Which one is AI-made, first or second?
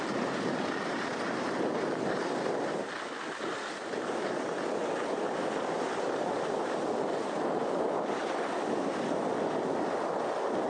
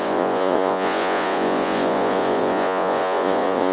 second